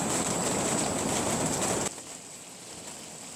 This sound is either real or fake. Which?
real